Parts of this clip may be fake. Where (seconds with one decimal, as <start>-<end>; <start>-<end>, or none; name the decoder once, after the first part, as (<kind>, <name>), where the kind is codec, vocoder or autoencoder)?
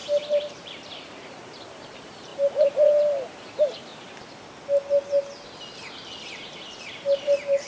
0.0-3.9 (vocoder, BigVGAN v2); 6.8-7.7